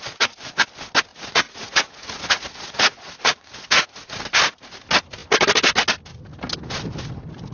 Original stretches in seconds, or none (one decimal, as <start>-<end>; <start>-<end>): 0.0-1.1; 4.2-7.5